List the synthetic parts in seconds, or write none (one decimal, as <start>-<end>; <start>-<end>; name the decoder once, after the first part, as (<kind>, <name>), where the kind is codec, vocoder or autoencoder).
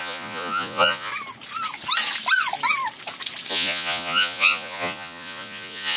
0.0-1.1 (vocoder, Vocos); 3.5-6.0